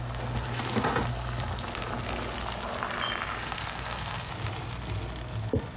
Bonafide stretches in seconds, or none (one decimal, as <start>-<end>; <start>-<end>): 0.0-3.4; 4.3-5.8